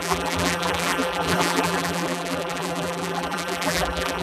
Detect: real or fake fake